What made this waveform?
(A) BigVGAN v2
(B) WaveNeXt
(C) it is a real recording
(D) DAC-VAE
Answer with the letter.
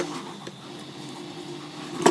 C